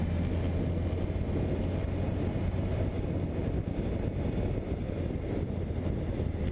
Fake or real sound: real